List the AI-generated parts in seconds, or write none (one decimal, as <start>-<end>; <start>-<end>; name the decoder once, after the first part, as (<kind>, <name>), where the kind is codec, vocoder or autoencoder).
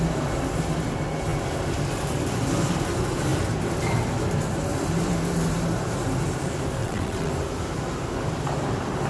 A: 6.8-7.3 (vocoder, WaveNeXt)